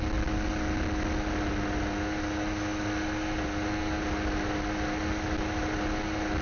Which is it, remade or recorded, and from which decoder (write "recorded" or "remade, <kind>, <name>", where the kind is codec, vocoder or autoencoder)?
recorded